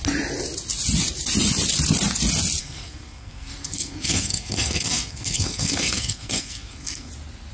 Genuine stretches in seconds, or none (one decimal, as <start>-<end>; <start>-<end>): 0.0-2.6; 7.1-7.5